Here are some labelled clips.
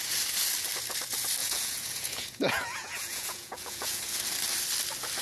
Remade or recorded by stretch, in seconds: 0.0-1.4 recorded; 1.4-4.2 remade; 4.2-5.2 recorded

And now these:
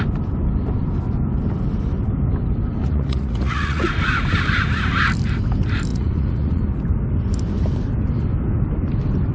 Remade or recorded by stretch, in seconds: 0.0-2.8 recorded; 2.8-3.9 remade; 3.9-5.9 recorded; 5.9-6.6 remade; 6.6-9.3 recorded

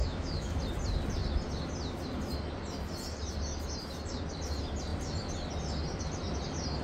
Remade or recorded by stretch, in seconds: 0.0-0.6 remade; 0.6-6.8 recorded

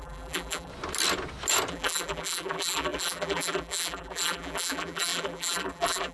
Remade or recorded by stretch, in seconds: 0.0-0.7 remade; 0.7-1.7 recorded; 1.7-6.1 remade

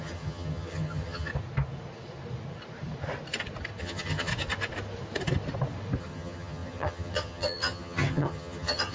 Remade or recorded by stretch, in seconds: 0.0-1.3 remade; 1.3-3.8 recorded; 3.8-4.3 remade; 4.3-6.0 recorded; 6.0-8.9 remade

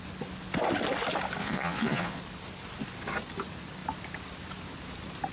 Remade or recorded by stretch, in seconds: 0.0-1.4 recorded; 1.4-2.2 remade; 2.2-5.3 recorded